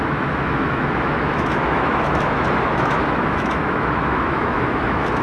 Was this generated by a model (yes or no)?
yes